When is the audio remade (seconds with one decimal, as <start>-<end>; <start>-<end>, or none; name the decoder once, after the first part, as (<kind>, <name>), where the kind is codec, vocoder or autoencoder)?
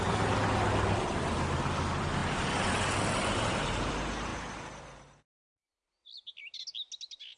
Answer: none